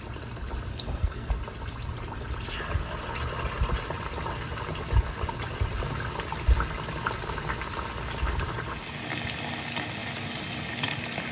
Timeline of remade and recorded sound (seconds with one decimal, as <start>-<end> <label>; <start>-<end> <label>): 0.0-0.7 recorded; 0.7-1.3 remade; 1.3-11.3 recorded

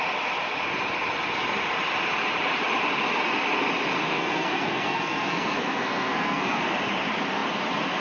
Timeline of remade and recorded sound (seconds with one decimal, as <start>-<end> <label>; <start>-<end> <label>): 0.0-4.1 recorded; 4.1-6.6 remade; 6.6-8.0 recorded

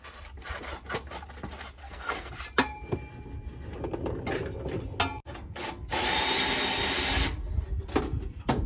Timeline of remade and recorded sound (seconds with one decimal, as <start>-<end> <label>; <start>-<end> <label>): 0.0-1.8 recorded; 1.8-2.3 remade; 2.3-8.7 recorded

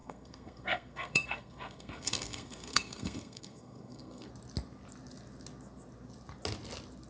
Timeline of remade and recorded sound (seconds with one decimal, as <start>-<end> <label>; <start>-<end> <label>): 0.0-4.3 remade; 4.3-7.1 recorded

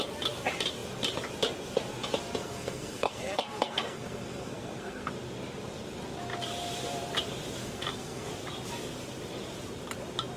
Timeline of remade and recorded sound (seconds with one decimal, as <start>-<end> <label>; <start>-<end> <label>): 0.0-2.4 recorded; 2.4-5.1 remade; 5.1-7.6 recorded; 7.6-8.3 remade; 8.3-10.4 recorded

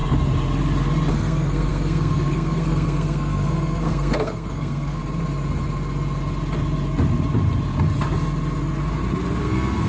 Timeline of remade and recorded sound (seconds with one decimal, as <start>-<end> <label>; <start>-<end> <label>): 0.0-1.1 recorded; 1.1-5.0 remade; 5.0-9.4 recorded; 9.4-9.9 remade

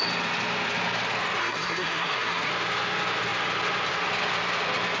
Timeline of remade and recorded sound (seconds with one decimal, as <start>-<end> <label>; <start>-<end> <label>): 0.0-1.4 recorded; 1.4-2.5 remade; 2.5-5.0 recorded